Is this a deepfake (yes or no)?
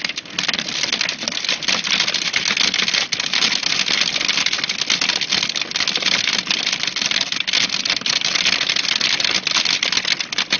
no